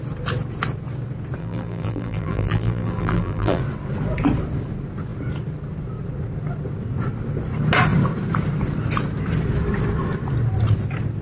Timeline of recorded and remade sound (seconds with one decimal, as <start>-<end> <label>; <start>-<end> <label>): 0.0-1.4 recorded; 1.4-3.6 remade; 3.6-11.2 recorded